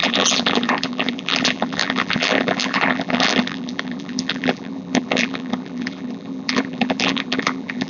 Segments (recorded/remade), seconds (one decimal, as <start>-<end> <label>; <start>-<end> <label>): 0.0-7.9 remade